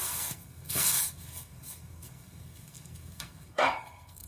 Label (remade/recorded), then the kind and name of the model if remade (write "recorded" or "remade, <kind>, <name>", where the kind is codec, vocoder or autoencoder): remade, codec, SNAC